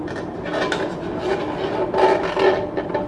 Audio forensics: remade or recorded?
recorded